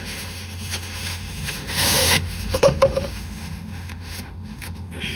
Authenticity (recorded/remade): remade